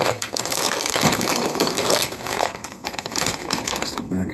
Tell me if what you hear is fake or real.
fake